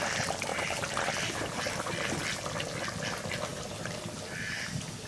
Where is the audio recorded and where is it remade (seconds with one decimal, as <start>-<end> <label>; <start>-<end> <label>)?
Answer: 0.0-0.5 recorded; 0.5-1.1 remade; 1.1-5.1 recorded

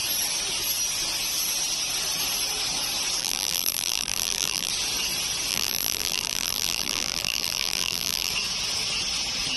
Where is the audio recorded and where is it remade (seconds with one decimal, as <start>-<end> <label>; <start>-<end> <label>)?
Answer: 0.0-3.2 recorded; 3.2-4.7 remade; 4.7-5.5 recorded; 5.5-8.3 remade; 8.3-9.6 recorded